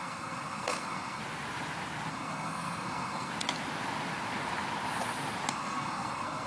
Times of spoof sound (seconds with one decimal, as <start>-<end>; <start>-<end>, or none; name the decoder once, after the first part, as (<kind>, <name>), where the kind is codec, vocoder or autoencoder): 0.0-1.2 (codec, SNAC); 2.1-3.3; 5.5-6.5